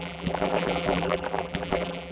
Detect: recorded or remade remade